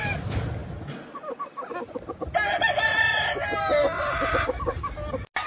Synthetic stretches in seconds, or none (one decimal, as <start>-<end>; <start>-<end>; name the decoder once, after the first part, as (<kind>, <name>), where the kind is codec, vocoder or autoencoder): none